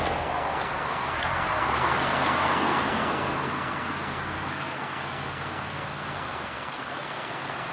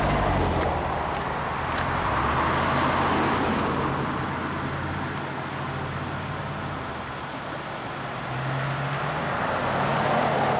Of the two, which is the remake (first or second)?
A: first